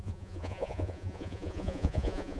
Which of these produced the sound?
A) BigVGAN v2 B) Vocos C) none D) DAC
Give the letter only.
B